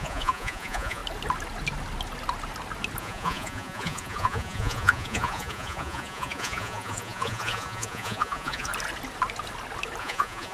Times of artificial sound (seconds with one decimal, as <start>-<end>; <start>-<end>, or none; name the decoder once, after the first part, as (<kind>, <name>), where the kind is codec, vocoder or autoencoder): 0.0-1.0 (vocoder, Vocos); 3.0-8.7; 10.0-10.5